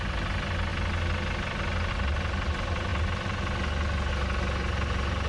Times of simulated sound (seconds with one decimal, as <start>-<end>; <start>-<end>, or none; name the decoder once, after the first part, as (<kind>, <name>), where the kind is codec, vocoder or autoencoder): none